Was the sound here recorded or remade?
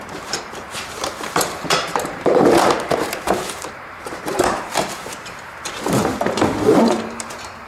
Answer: remade